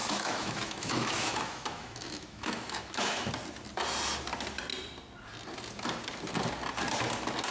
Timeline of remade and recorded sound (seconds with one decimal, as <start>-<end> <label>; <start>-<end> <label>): 0.0-3.3 remade; 3.3-7.5 recorded